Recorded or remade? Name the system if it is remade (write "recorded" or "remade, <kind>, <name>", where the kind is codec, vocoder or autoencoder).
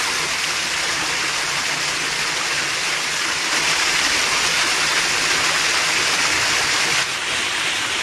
recorded